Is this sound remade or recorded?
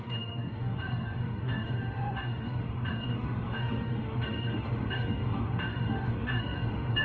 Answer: remade